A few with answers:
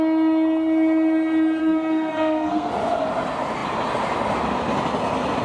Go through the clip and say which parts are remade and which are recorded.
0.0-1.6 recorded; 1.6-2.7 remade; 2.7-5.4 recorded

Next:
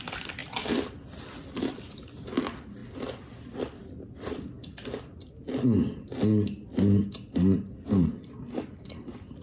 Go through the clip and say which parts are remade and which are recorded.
0.0-9.4 recorded